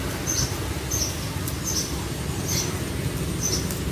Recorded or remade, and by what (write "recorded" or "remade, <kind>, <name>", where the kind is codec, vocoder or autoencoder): recorded